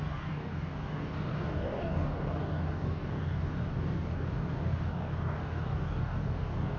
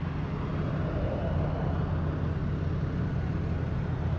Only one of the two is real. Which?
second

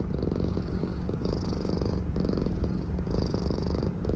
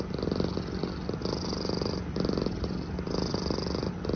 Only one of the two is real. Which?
second